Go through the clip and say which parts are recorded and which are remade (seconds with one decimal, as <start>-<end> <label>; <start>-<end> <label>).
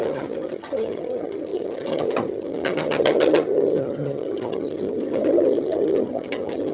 0.0-6.7 remade